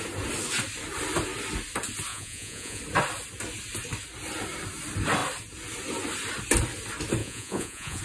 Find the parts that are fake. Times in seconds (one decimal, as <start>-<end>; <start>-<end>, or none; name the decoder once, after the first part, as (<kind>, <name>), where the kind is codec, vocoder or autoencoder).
2.1-2.8 (vocoder, Vocos); 7.2-8.0